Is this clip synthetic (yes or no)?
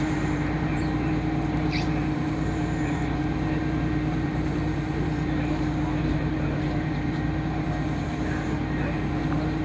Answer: yes